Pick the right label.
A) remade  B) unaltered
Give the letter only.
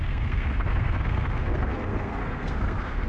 A